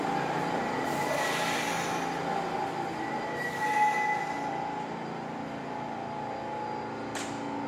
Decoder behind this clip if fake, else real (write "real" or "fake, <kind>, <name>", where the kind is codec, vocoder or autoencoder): real